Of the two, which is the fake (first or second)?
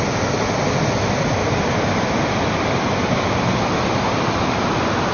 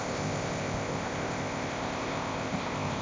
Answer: second